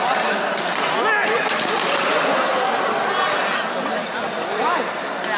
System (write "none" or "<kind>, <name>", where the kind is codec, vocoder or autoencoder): none